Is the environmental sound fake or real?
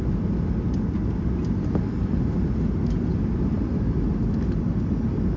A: real